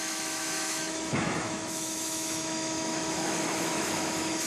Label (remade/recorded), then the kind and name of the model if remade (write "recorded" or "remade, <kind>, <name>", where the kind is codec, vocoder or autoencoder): remade, autoencoder, DAC-VAE